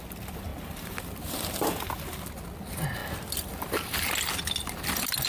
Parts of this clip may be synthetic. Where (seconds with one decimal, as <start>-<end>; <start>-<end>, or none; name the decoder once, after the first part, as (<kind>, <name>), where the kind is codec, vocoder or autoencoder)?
none